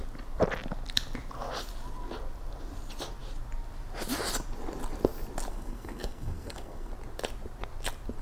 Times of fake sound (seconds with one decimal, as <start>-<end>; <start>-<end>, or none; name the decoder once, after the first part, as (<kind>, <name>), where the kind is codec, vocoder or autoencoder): 5.5-6.9 (codec, SNAC)